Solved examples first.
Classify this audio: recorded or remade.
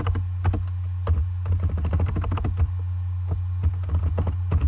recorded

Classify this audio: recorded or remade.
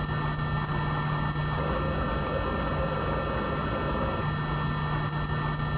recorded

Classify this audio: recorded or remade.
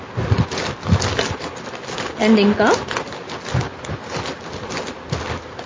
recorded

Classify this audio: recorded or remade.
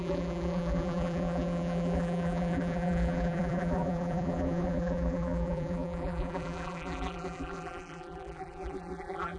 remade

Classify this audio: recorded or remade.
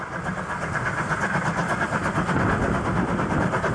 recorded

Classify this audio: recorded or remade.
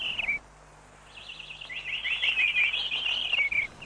remade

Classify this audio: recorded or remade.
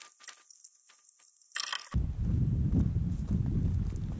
recorded